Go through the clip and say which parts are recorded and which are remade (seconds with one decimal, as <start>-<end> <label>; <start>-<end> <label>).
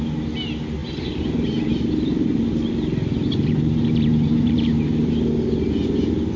0.0-0.8 recorded; 0.8-2.4 remade; 2.4-3.1 recorded; 3.1-5.1 remade; 5.1-6.4 recorded